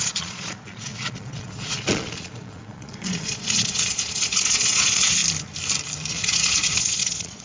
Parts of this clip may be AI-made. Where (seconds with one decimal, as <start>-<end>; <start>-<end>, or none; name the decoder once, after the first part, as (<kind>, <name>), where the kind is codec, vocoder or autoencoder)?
0.0-5.2 (vocoder, Vocos); 6.1-7.4